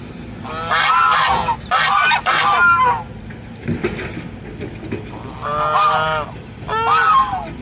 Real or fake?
real